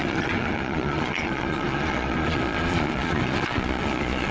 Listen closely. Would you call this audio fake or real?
fake